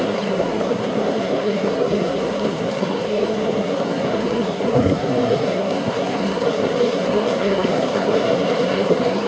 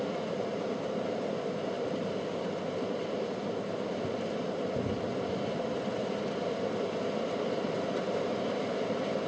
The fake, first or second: first